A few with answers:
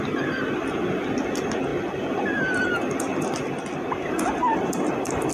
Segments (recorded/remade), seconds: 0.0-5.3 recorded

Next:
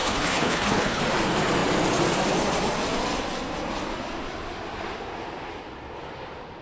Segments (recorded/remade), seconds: 0.0-1.0 remade; 1.0-6.6 recorded

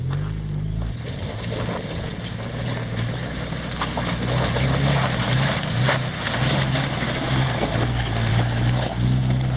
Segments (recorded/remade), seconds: 0.0-7.4 recorded; 7.4-8.3 remade; 8.3-9.6 recorded